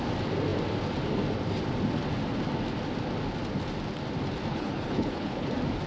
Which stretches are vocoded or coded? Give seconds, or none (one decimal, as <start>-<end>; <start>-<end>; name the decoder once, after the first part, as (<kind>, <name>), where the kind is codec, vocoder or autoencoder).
4.5-5.5 (codec, HILCodec)